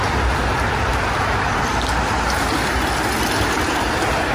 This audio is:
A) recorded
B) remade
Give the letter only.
A